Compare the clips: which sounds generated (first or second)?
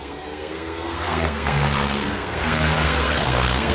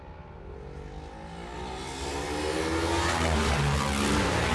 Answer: first